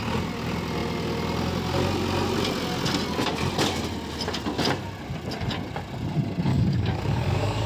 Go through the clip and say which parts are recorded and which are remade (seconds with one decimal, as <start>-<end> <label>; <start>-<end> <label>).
0.0-6.5 recorded; 6.5-7.7 remade